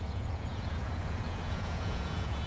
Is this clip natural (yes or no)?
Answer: no